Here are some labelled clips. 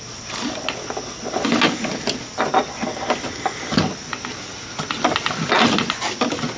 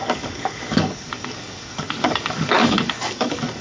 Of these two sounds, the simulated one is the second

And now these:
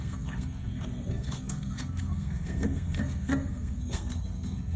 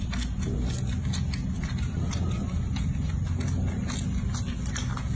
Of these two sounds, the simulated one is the first